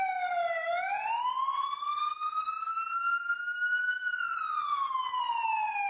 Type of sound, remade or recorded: recorded